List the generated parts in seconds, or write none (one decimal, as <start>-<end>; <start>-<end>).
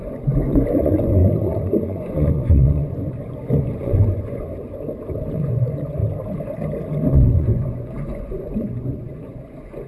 0.0-4.5; 5.3-6.0; 7.1-9.9